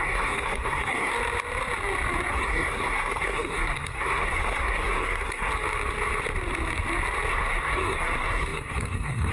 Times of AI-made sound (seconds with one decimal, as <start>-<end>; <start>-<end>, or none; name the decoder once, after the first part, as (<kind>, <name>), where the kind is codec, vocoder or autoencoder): 0.0-1.1 (codec, SNAC); 2.3-5.5; 7.3-9.3